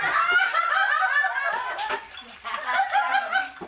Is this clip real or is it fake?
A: real